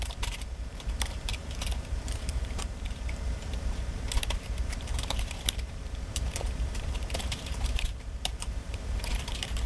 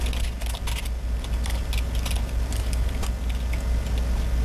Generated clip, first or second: first